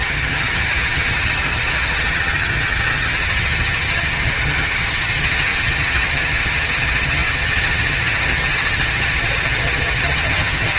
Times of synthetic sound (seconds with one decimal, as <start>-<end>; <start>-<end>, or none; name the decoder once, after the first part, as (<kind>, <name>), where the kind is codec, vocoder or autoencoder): 0.0-10.8 (vocoder, HiFi-GAN)